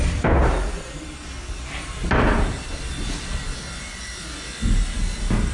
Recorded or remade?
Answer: remade